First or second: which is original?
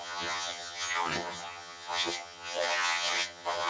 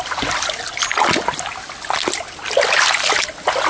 second